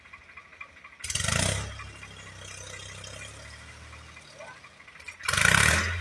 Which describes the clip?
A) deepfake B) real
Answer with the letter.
B